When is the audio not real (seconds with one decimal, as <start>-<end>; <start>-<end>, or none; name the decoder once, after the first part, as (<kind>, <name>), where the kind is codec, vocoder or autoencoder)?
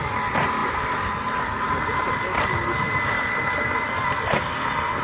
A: none